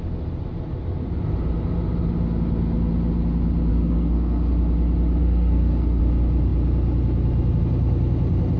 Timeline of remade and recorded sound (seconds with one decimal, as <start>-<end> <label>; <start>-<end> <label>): 0.0-3.7 recorded; 3.7-4.5 remade; 4.5-5.2 recorded; 5.2-6.0 remade; 6.0-8.6 recorded